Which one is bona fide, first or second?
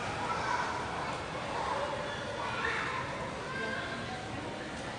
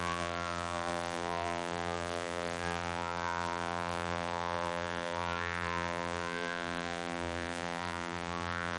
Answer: first